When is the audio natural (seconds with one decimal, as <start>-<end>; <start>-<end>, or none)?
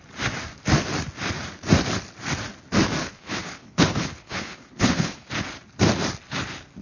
0.0-3.0; 5.3-6.8